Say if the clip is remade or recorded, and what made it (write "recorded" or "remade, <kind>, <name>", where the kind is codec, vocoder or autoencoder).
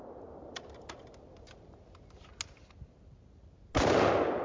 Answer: recorded